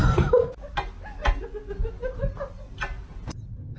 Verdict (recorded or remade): recorded